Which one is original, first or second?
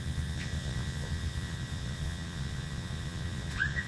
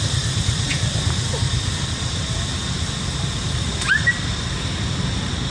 second